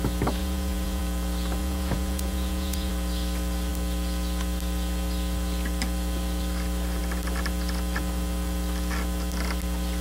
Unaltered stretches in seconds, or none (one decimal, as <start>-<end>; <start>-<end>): 0.0-0.4; 1.0-1.6; 2.9-10.0